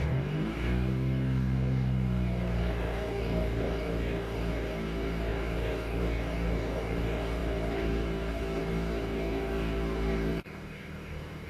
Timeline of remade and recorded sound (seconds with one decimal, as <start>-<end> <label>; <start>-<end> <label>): 0.0-11.5 remade

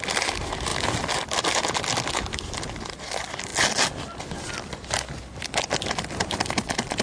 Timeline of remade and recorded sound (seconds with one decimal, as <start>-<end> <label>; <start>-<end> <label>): 0.0-7.0 recorded

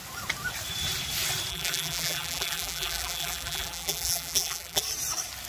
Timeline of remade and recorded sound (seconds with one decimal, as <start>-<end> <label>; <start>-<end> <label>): 0.0-1.5 recorded; 1.5-4.8 remade; 4.8-5.5 recorded

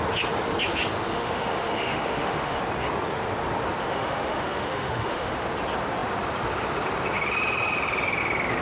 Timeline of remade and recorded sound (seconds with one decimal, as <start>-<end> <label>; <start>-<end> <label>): 0.0-1.1 recorded; 1.1-2.6 remade; 2.6-3.8 recorded; 3.8-5.3 remade; 5.3-8.6 recorded

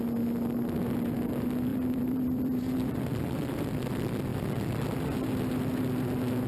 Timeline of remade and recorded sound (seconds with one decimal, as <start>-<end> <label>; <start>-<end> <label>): 0.0-1.7 recorded; 1.7-3.9 remade; 3.9-6.5 recorded

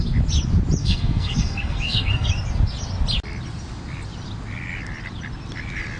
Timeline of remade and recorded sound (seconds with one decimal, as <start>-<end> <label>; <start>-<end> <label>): 0.0-0.8 recorded; 0.8-2.3 remade; 2.3-6.0 recorded

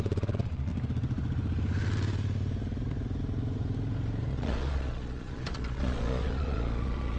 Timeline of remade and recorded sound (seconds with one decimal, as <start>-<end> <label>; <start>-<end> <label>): 0.0-0.7 remade; 0.7-4.3 recorded; 4.3-7.2 remade